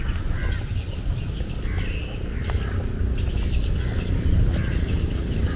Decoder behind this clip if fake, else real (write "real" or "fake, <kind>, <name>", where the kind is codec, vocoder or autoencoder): real